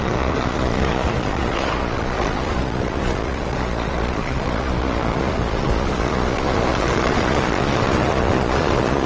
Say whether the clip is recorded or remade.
remade